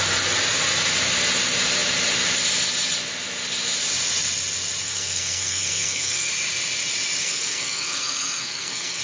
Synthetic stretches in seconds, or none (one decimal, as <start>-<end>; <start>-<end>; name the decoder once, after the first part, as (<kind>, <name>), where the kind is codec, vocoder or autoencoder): 4.8-6.3 (codec, SNAC); 7.2-9.0